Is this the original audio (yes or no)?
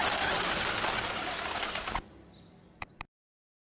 yes